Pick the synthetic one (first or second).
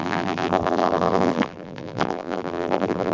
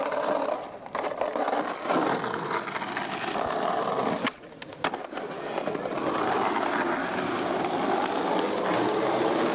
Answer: first